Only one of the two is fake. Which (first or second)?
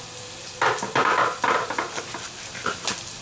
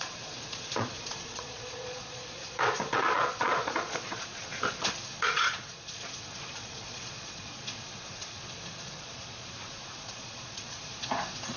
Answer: second